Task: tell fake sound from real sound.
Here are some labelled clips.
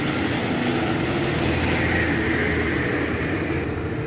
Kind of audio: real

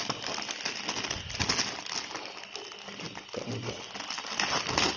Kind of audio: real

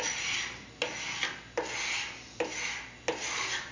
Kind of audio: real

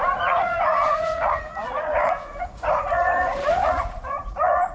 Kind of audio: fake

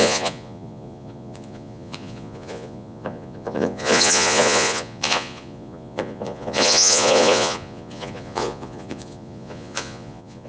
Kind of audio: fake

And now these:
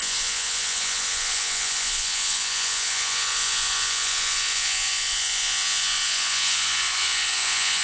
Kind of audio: fake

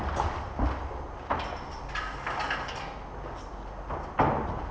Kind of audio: real